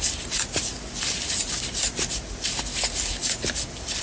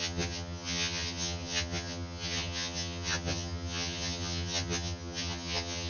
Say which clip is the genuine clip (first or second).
first